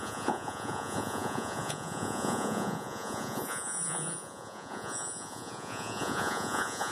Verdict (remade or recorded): remade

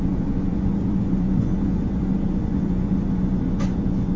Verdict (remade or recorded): remade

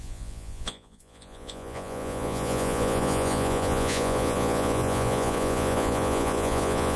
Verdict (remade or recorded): remade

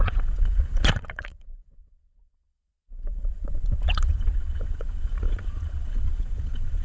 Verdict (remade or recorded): remade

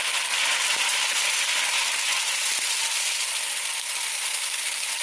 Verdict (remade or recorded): recorded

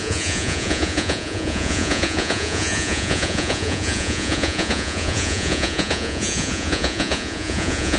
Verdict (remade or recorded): remade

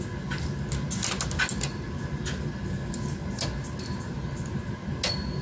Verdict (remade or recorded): recorded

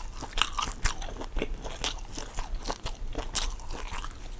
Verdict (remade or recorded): recorded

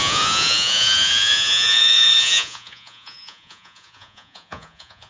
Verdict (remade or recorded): remade